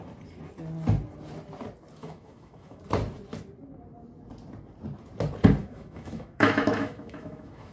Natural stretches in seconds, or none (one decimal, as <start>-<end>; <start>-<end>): 0.0-2.0; 2.8-5.6